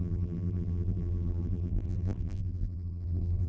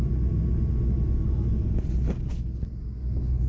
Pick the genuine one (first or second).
second